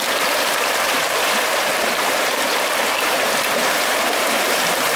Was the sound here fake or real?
fake